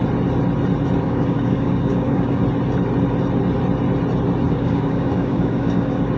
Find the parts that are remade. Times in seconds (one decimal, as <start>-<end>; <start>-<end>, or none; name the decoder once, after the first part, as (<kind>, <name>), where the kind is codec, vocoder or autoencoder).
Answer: 1.0-2.4 (codec, DAC); 4.5-6.2